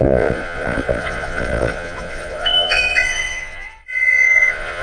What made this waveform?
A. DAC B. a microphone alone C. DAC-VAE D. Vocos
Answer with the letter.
D